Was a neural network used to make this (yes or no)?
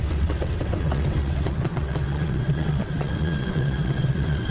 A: yes